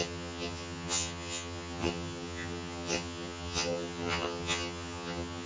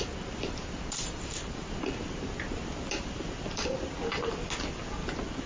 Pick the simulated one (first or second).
first